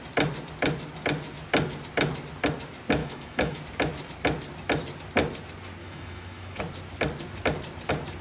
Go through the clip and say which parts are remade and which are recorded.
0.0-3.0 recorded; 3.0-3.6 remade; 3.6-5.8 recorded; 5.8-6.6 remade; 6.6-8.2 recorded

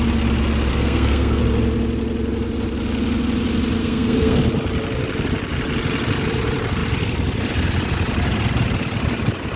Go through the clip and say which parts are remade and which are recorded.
0.0-0.7 recorded; 0.7-1.4 remade; 1.4-3.8 recorded; 3.8-4.4 remade; 4.4-9.6 recorded

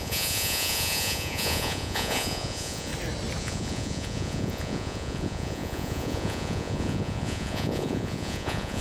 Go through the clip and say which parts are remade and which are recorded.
0.0-2.9 remade; 2.9-3.4 recorded; 3.4-8.8 remade

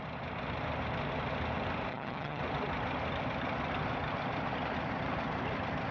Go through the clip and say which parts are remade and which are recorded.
0.0-1.9 recorded; 1.9-2.4 remade; 2.4-5.9 recorded

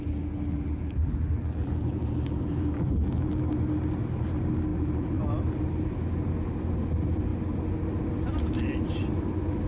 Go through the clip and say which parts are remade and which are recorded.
0.0-0.5 recorded; 0.5-3.4 remade; 3.4-4.7 recorded; 4.7-5.2 remade; 5.2-9.7 recorded

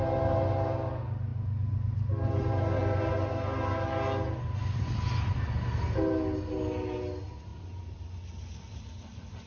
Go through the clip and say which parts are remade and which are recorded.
0.0-9.5 recorded